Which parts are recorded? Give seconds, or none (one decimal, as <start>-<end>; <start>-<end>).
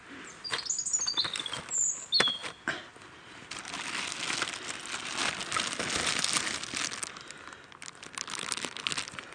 0.0-9.3